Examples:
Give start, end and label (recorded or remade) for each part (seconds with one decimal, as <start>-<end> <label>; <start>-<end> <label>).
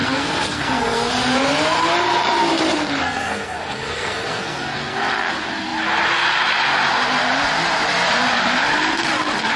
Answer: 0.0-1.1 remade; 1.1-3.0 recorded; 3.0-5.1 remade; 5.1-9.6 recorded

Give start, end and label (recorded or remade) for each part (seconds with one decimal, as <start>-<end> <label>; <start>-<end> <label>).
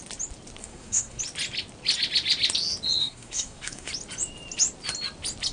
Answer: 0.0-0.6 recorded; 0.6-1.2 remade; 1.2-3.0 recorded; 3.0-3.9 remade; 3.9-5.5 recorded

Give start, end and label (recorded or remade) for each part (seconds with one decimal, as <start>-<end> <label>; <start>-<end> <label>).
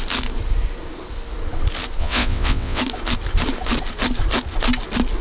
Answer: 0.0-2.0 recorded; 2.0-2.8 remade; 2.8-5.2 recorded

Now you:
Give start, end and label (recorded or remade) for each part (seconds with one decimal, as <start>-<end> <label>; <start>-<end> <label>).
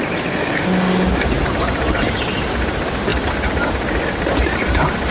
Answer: 0.0-5.1 recorded